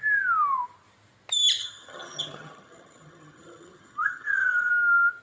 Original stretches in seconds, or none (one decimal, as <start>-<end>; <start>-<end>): 0.0-1.6; 4.7-5.2